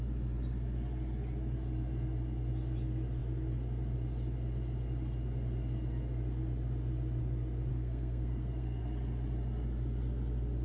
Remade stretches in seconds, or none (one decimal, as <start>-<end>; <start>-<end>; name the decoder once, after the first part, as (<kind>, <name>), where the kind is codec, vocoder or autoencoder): 7.7-8.8 (codec, SNAC)